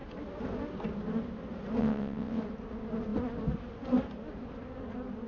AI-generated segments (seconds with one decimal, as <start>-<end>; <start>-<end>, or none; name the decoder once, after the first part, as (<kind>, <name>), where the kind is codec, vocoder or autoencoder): 1.8-2.4 (vocoder, WaveNeXt)